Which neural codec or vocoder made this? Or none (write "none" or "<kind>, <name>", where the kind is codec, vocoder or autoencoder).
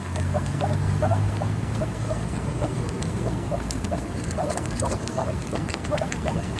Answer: codec, SNAC